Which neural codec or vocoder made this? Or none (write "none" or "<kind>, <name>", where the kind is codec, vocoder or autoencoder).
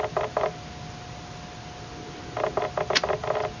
none